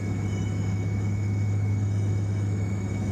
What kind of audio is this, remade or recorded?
remade